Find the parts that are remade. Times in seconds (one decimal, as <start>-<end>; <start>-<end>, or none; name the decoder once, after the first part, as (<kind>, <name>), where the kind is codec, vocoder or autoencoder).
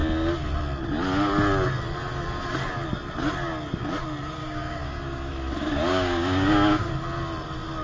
4.4-5.3 (codec, DAC); 5.9-6.9